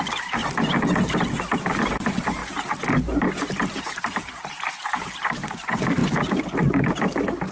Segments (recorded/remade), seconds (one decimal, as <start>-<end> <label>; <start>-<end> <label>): 0.0-0.4 remade; 0.4-1.7 recorded; 1.7-2.4 remade; 2.4-3.8 recorded; 3.8-6.0 remade; 6.0-7.5 recorded